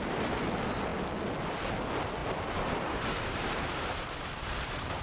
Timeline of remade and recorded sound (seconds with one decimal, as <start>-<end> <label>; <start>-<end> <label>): 0.0-2.2 recorded; 2.2-5.0 remade